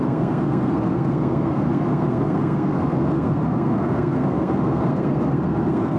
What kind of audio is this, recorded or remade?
remade